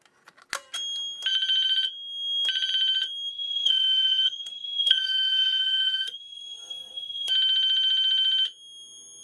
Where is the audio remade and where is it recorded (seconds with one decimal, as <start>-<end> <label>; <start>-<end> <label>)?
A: 0.0-3.3 recorded; 3.3-7.3 remade; 7.3-9.2 recorded